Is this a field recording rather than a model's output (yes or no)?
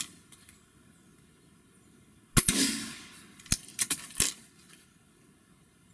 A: yes